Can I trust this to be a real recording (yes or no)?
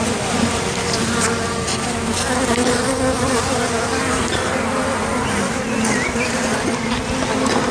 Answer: no